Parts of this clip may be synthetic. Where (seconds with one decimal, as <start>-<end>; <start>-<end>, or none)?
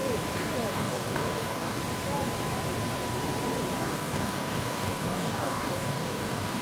0.7-1.8; 3.8-6.6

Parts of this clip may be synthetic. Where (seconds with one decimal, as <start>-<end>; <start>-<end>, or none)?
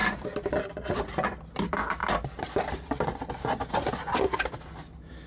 none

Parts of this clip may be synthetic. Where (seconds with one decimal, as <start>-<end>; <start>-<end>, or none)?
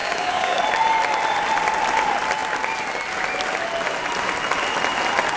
0.0-0.6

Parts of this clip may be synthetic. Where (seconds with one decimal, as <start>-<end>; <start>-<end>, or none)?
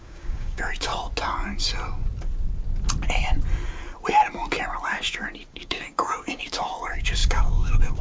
0.0-0.9; 5.5-8.0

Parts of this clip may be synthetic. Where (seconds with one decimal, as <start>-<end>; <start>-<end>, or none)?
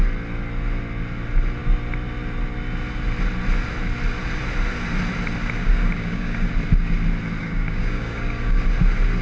5.6-6.5; 7.4-8.6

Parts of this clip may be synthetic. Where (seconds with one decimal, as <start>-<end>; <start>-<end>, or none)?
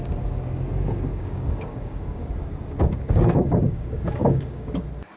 1.1-2.4; 2.8-4.8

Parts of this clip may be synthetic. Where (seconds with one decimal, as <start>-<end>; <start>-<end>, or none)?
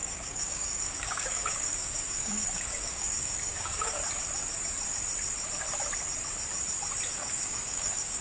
0.0-4.0; 7.1-8.2